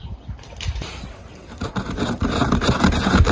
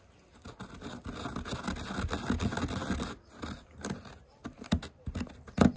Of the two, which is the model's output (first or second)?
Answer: first